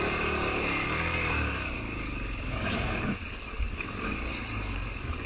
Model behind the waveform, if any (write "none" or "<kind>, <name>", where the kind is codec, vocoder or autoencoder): codec, DAC